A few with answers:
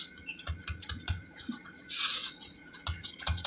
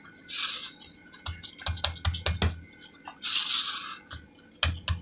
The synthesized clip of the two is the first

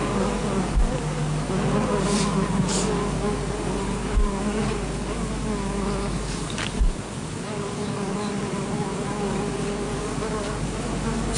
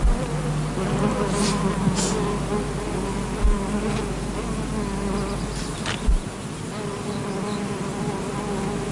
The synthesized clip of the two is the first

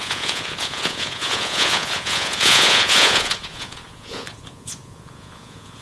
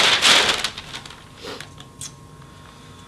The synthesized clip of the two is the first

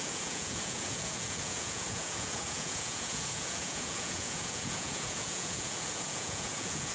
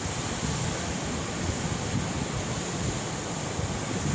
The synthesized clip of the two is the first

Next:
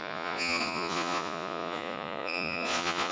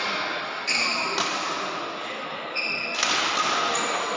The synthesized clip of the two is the first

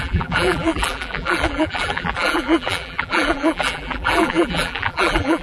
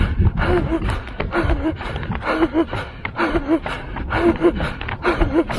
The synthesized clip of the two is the first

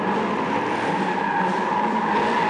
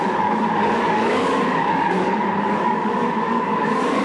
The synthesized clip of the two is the second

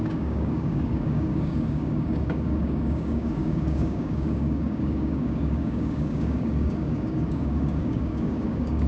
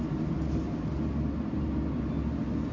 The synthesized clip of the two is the first